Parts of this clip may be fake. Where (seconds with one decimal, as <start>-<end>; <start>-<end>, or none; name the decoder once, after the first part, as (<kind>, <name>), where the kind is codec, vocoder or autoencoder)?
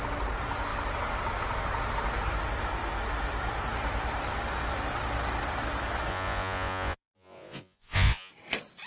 6.1-8.3 (vocoder, Vocos)